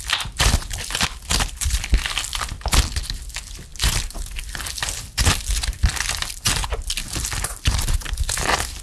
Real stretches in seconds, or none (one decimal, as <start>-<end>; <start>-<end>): 0.0-8.8

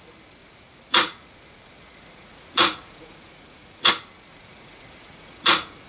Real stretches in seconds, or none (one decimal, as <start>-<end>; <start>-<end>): 0.0-0.4; 3.9-4.3

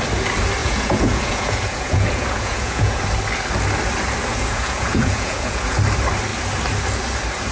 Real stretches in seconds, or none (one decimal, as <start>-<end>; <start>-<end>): 0.0-0.6; 3.0-4.3; 5.8-7.5

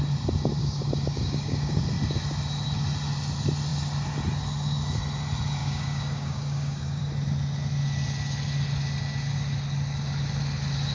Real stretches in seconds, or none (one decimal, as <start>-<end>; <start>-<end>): 0.0-0.6; 1.8-5.6; 7.0-10.9

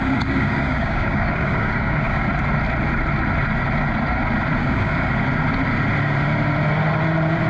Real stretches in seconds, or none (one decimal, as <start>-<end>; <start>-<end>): 2.3-4.6; 5.1-7.5